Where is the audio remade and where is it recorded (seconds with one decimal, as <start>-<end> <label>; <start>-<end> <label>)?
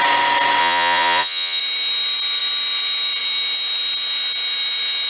0.0-0.6 recorded; 0.6-1.6 remade; 1.6-5.1 recorded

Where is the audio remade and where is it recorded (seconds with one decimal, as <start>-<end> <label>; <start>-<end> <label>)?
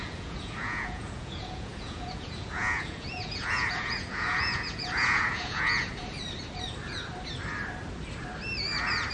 0.0-6.0 remade; 6.0-9.1 recorded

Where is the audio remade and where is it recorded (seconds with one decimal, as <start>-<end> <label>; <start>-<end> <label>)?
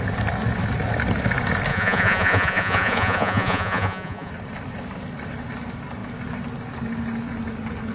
0.0-1.7 recorded; 1.7-4.3 remade; 4.3-7.9 recorded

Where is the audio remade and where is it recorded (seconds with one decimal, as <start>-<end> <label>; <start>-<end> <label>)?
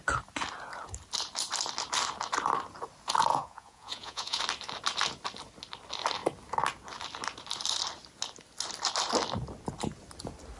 0.0-3.3 recorded; 3.3-4.4 remade; 4.4-10.6 recorded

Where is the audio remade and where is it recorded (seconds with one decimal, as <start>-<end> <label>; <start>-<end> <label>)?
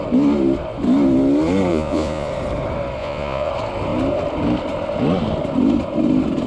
0.0-1.7 recorded; 1.7-2.3 remade; 2.3-3.0 recorded; 3.0-3.5 remade; 3.5-6.5 recorded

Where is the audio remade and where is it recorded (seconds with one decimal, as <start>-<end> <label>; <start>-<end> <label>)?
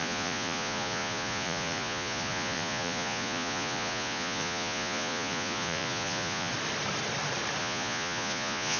0.0-6.5 remade; 6.5-7.6 recorded; 7.6-8.8 remade